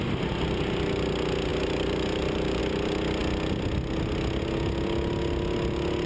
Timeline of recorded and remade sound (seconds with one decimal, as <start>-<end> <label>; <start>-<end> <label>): 0.0-1.5 recorded; 1.5-2.6 remade; 2.6-6.1 recorded